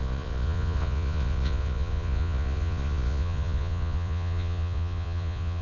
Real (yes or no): no